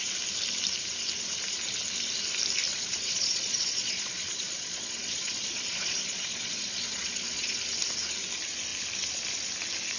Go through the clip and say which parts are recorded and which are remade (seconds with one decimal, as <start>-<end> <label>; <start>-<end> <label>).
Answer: 0.0-2.7 recorded; 2.7-7.6 remade; 7.6-10.0 recorded